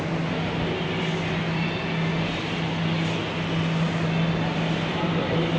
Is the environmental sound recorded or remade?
recorded